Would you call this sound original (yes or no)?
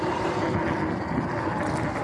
yes